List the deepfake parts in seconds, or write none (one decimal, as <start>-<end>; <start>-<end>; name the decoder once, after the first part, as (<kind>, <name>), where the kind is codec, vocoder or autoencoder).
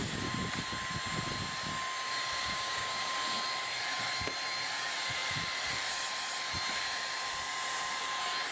2.4-3.1 (codec, DAC)